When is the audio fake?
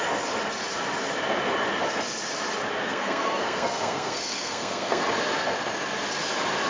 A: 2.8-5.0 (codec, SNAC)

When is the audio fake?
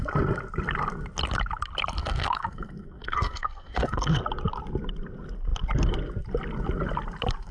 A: 2.0-4.2 (codec, SNAC)